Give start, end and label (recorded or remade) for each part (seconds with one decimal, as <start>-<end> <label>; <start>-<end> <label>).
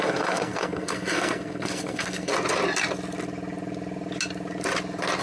0.0-2.3 remade; 2.3-5.2 recorded